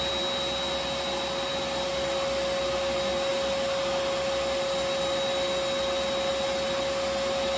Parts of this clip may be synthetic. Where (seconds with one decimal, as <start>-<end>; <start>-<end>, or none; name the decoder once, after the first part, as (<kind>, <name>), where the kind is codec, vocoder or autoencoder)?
none